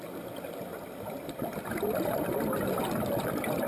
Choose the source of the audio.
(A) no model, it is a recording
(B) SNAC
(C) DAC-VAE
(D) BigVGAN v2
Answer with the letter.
A